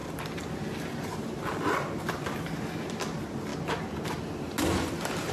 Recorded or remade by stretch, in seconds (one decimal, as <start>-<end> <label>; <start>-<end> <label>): 0.0-5.3 recorded